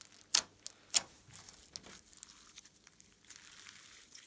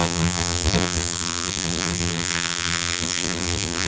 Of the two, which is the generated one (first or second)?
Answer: second